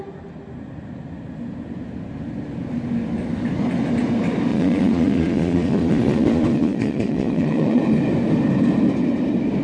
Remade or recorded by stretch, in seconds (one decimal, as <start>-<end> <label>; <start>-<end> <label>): 0.0-4.5 recorded; 4.5-7.8 remade; 7.8-9.6 recorded